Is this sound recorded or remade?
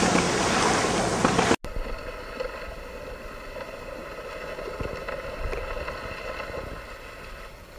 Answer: recorded